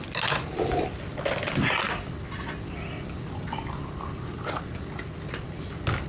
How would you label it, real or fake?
real